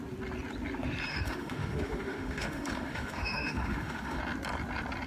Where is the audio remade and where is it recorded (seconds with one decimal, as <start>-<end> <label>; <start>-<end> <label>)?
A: 0.0-1.1 recorded; 1.1-4.2 remade; 4.2-5.1 recorded